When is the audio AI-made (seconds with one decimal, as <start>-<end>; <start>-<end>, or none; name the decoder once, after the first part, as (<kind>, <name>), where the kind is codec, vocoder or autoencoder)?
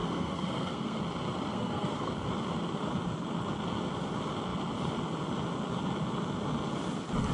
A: 0.0-1.0 (codec, SNAC); 1.5-2.1